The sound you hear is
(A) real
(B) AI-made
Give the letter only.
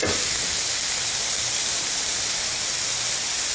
A